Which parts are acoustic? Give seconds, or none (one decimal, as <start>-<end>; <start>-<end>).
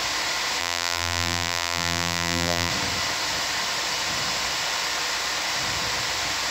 0.0-0.6; 2.7-6.5